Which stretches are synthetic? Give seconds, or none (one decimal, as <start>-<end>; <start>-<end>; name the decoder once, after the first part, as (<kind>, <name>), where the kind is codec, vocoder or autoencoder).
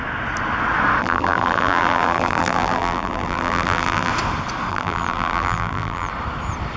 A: 1.0-4.1 (vocoder, BigVGAN v2); 4.7-6.1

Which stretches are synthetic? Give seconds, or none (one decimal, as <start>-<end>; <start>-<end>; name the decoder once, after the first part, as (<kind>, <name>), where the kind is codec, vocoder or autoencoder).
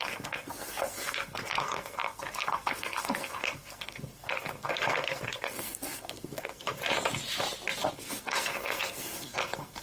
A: 0.0-6.8 (codec, SNAC); 7.9-9.8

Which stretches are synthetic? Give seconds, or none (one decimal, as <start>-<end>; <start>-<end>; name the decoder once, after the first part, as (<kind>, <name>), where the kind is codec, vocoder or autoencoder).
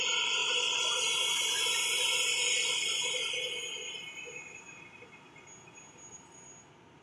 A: none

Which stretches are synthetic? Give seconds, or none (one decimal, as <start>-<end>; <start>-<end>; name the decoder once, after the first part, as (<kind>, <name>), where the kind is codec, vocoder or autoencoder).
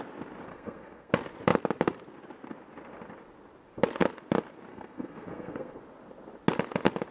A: 0.5-1.1 (codec, SNAC); 4.7-5.8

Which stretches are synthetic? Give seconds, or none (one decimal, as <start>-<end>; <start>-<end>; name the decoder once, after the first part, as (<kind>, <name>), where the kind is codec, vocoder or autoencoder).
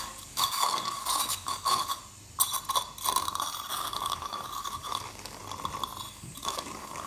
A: 0.0-2.0 (codec, DAC); 3.7-5.4; 6.1-7.1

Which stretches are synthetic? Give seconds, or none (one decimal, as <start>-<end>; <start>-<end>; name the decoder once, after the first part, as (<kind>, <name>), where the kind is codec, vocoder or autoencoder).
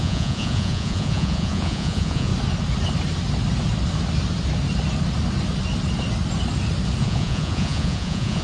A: 0.0-2.3 (vocoder, Vocos); 7.0-8.4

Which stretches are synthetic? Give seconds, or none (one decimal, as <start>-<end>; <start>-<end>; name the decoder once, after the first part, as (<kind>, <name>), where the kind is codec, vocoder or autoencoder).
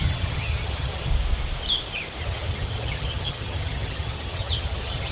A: 0.0-1.1 (vocoder, HiFi-GAN); 2.2-5.1